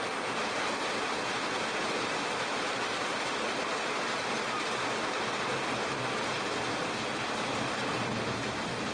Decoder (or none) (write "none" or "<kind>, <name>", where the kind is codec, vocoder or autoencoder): none